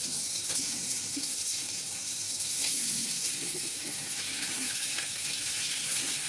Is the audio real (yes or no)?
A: no